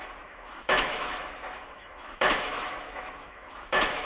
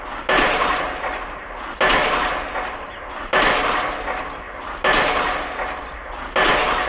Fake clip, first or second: first